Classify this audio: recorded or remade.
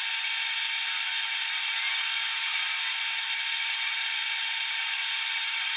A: recorded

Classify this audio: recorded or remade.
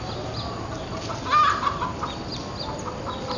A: recorded